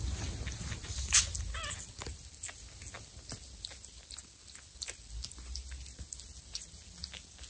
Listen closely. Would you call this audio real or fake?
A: real